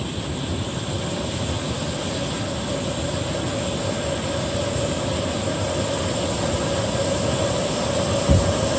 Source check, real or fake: real